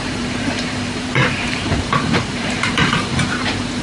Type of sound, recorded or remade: remade